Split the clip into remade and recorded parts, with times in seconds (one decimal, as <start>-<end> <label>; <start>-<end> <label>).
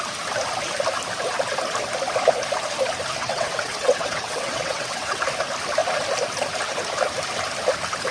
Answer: 0.0-3.2 recorded; 3.2-5.2 remade; 5.2-8.1 recorded